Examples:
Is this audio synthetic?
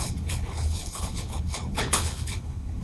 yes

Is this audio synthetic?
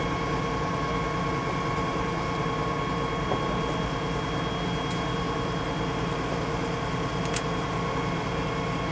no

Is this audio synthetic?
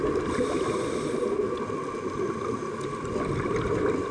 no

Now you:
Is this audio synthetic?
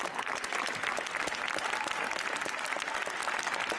no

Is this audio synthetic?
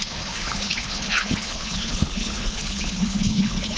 yes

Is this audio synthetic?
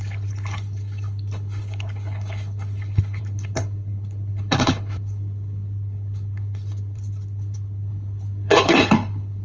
yes